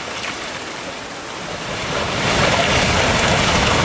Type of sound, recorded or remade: recorded